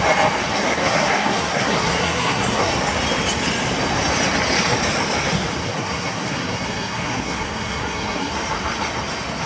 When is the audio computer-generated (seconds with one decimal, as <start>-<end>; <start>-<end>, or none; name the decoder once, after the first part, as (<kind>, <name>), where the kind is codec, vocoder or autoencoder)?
0.5-2.7 (codec, SNAC); 5.6-8.3